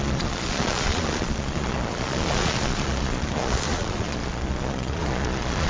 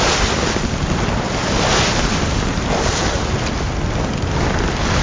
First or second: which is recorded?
second